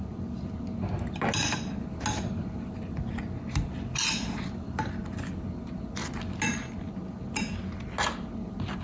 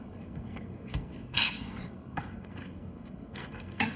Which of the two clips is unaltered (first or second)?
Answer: first